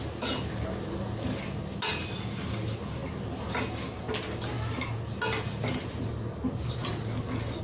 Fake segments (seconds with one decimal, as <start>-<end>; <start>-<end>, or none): none